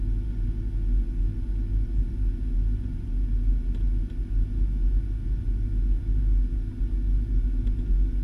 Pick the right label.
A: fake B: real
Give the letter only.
B